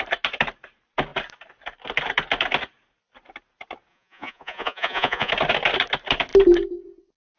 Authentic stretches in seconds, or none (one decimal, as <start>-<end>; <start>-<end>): 0.0-3.9; 5.3-7.4